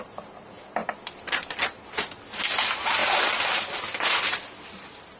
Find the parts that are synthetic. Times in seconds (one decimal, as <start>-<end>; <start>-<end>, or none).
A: none